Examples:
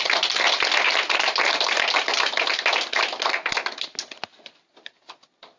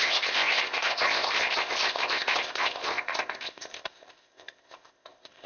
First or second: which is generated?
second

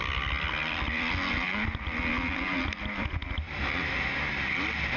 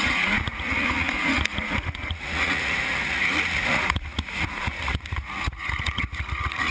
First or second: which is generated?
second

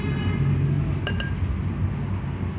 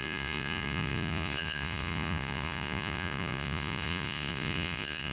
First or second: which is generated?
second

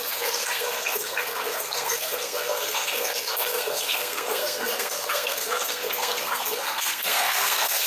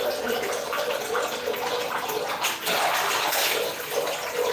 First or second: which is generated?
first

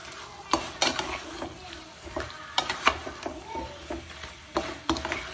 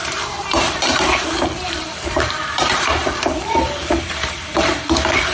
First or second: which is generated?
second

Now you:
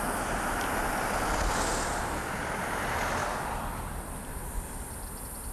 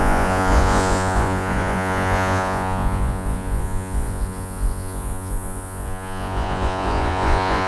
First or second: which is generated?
second